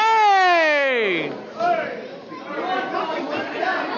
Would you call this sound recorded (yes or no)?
yes